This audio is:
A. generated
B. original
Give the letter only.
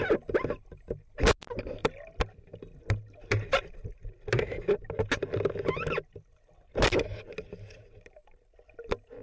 B